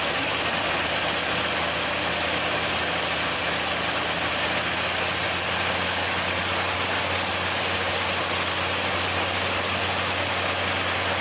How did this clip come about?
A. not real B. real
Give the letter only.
B